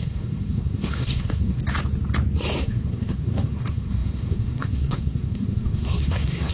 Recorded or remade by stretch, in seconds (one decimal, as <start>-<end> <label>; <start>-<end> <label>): 0.0-1.6 remade; 1.6-2.6 recorded; 2.6-6.5 remade